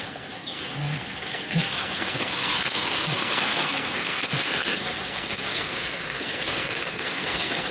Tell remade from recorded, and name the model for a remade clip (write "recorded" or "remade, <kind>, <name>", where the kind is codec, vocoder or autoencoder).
remade, codec, SNAC